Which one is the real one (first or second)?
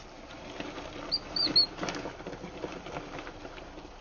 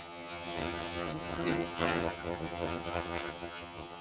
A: first